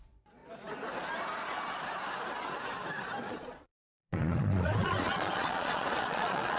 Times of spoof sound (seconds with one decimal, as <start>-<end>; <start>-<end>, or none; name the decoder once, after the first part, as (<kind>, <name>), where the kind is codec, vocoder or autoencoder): 0.0-0.4 (vocoder, Vocos); 3.2-6.6

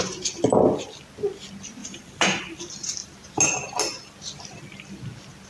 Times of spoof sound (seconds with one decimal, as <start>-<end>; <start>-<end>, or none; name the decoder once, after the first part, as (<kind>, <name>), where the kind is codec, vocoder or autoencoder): 1.8-2.6 (vocoder, BigVGAN v2)